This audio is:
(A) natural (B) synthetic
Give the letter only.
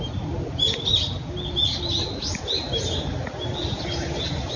A